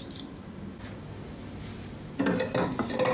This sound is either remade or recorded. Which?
recorded